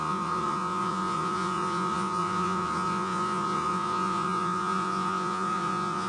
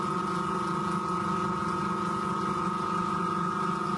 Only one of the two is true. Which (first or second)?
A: second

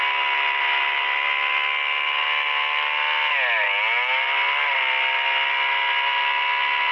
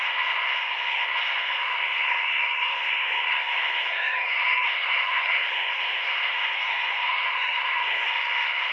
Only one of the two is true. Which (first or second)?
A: first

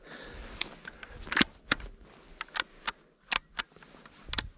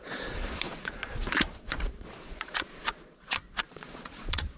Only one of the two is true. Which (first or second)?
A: first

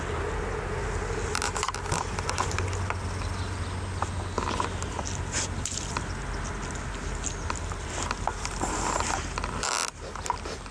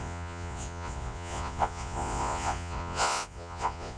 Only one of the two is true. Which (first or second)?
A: first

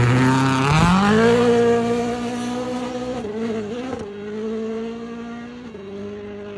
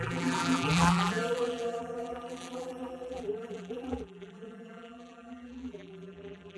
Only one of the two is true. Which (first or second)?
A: first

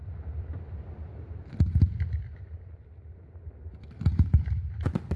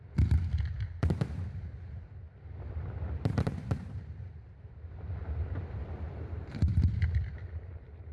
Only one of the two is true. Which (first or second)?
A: first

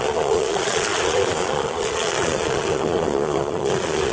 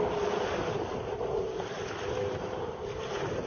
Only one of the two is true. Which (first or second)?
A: second